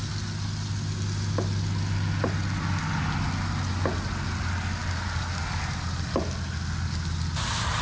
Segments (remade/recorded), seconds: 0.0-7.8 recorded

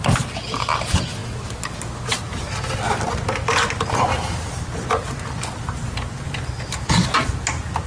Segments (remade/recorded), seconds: 0.0-7.9 recorded

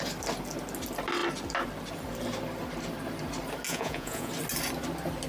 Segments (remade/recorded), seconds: 0.0-3.7 recorded; 3.7-4.3 remade; 4.3-5.3 recorded